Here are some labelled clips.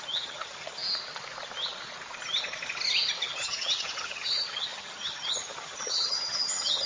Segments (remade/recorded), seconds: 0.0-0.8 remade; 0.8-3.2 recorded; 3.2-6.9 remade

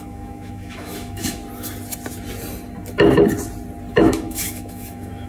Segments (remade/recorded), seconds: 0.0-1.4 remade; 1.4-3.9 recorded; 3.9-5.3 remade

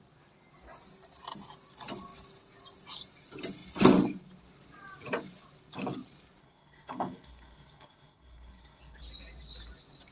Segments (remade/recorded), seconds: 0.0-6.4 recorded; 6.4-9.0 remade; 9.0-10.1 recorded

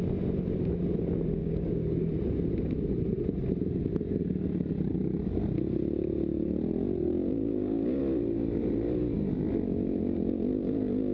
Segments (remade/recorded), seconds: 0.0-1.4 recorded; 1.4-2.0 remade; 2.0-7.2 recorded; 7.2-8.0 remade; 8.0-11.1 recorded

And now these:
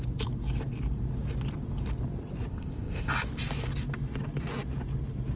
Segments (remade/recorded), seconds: 0.0-2.5 recorded; 2.5-3.1 remade; 3.1-5.4 recorded